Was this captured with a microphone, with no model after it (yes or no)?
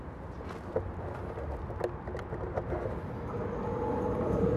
yes